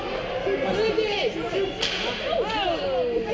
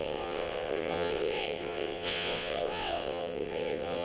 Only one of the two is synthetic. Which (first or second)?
second